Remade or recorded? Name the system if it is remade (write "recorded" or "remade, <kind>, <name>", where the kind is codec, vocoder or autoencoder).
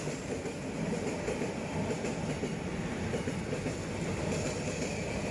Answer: recorded